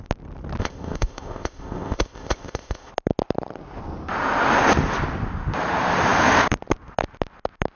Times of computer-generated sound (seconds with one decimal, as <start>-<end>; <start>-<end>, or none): 0.6-2.9